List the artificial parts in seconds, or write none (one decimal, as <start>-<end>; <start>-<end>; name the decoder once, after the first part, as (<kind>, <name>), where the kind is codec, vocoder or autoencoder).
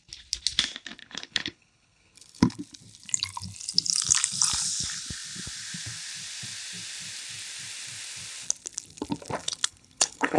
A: 1.0-2.6 (codec, HILCodec); 9.4-10.4